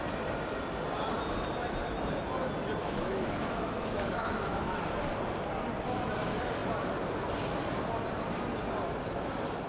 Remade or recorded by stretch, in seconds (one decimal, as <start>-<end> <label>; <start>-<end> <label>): 0.0-2.8 recorded; 2.8-4.8 remade; 4.8-9.7 recorded